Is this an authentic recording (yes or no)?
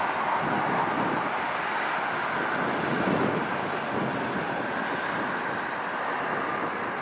yes